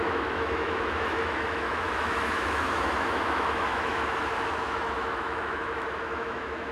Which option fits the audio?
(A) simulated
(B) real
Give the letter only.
A